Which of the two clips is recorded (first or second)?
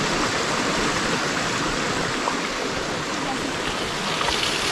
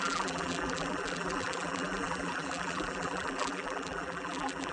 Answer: first